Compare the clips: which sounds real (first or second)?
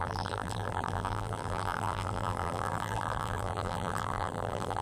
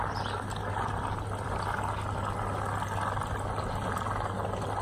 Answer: second